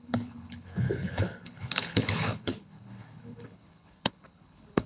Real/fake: fake